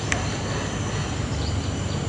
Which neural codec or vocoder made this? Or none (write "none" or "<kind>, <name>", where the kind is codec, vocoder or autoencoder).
none